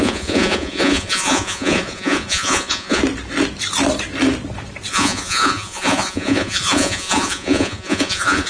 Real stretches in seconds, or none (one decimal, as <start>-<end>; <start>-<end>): 3.0-4.9